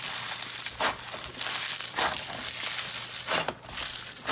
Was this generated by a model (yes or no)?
no